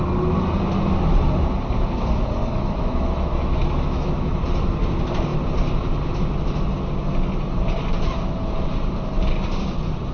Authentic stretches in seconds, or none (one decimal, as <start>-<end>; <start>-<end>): 0.0-2.4; 4.4-10.1